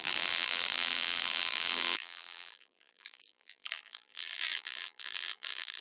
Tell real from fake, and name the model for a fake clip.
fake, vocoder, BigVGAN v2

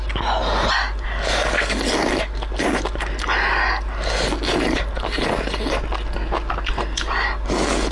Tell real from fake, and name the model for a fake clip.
real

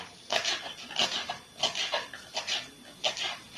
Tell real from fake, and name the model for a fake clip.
real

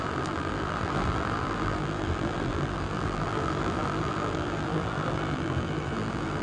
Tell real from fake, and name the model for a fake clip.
fake, vocoder, BigVGAN v2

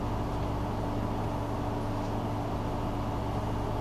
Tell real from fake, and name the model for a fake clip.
real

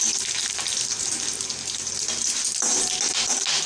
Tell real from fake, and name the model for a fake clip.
real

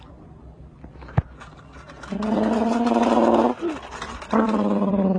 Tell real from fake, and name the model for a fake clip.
fake, vocoder, BigVGAN v2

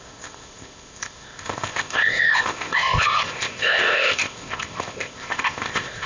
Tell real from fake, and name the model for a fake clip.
fake, codec, ZipCodec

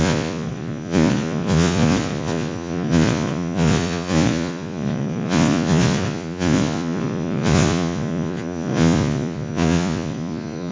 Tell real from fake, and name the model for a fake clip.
fake, vocoder, Vocos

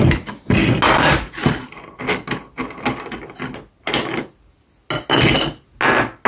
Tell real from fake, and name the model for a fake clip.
real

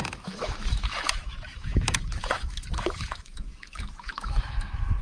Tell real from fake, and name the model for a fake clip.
fake, autoencoder, DAC-VAE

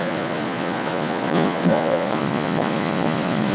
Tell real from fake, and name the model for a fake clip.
fake, vocoder, Vocos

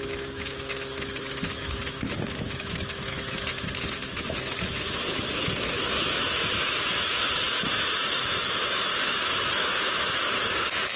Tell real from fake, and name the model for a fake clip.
fake, autoencoder, DAC-VAE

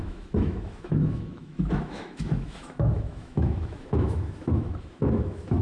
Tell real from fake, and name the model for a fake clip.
fake, autoencoder, DAC-VAE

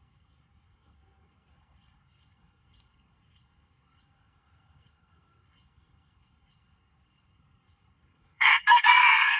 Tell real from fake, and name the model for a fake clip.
fake, codec, SNAC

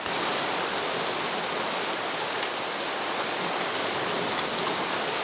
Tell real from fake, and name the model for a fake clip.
real